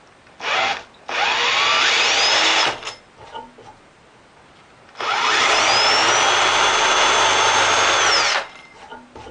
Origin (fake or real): real